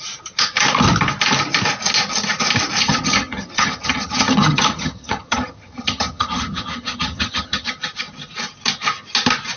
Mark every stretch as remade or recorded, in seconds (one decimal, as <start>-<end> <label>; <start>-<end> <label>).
0.0-2.8 recorded; 2.8-7.7 remade; 7.7-9.6 recorded